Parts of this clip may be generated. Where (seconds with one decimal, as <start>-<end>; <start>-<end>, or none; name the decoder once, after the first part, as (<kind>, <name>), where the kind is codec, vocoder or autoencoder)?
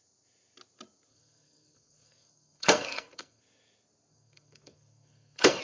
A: 1.1-3.4 (codec, SNAC); 4.1-5.6